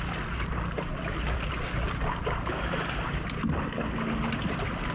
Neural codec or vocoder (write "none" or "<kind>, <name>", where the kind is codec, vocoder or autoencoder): none